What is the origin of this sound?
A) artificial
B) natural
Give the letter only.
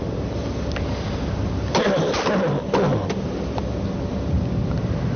B